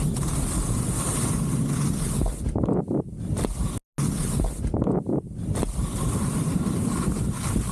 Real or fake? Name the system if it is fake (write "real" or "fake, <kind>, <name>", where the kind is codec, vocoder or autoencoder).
real